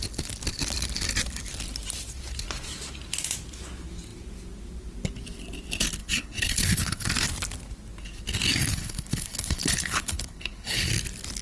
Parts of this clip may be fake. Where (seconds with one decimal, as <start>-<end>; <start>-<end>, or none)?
6.0-7.1; 8.7-10.9